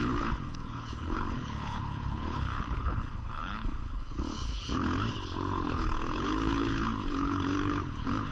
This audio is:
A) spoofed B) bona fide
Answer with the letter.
A